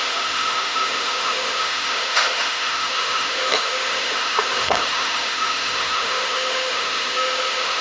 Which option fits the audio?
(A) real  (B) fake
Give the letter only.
B